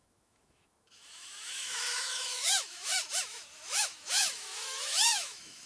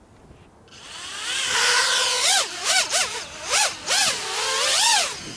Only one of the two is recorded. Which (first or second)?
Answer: second